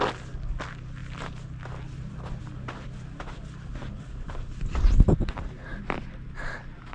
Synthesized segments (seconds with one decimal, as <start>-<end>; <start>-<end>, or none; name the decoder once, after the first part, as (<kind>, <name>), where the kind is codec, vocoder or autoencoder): 3.8-5.8 (vocoder, BigVGAN v2)